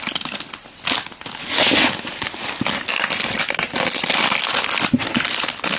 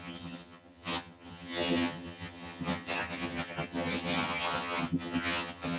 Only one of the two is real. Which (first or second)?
first